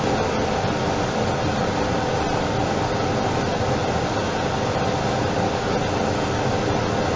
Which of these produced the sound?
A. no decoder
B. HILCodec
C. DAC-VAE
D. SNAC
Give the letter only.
A